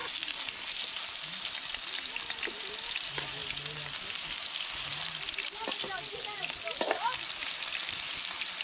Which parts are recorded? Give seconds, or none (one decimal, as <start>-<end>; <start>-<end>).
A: 0.0-8.6